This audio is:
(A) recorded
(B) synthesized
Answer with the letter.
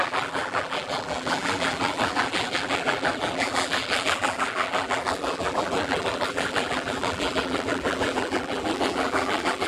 B